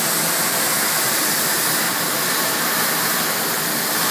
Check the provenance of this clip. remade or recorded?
recorded